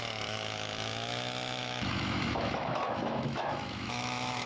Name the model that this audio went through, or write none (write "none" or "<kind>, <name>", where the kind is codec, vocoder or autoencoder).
autoencoder, DAC-VAE